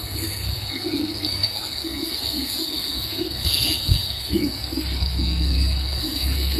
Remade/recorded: remade